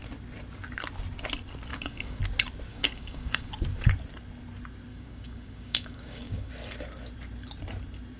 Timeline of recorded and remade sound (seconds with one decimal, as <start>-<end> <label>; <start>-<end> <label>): 0.0-1.7 recorded; 1.7-2.2 remade; 2.2-2.7 recorded; 2.7-3.5 remade; 3.5-4.9 recorded; 4.9-6.5 remade; 6.5-8.2 recorded